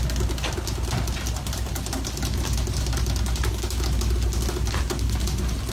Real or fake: real